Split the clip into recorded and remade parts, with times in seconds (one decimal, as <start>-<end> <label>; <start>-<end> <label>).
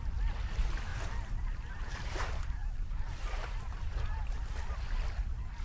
0.0-0.9 recorded; 0.9-4.3 remade; 4.3-5.6 recorded